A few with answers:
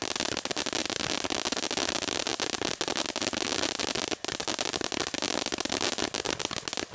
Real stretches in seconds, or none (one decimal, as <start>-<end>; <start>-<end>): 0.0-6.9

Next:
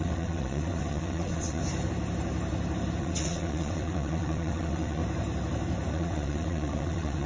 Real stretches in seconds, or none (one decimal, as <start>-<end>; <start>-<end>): 1.6-3.0; 5.0-5.9

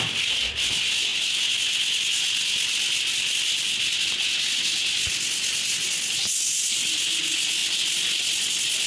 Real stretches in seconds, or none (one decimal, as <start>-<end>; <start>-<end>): 0.0-8.9